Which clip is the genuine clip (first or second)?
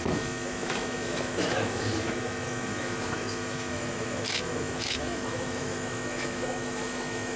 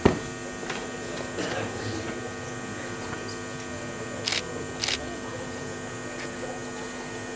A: second